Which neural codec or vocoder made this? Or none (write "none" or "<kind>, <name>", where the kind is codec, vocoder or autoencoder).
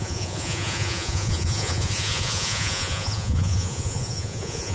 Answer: vocoder, Vocos